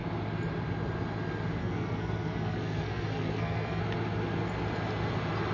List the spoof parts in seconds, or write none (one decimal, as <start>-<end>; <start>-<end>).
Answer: 1.6-3.8